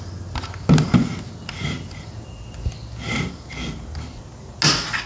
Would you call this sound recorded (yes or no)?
yes